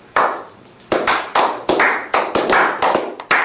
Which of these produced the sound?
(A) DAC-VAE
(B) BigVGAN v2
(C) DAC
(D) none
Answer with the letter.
D